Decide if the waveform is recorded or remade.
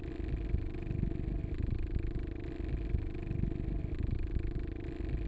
recorded